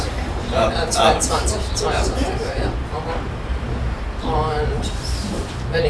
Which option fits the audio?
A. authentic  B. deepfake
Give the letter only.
B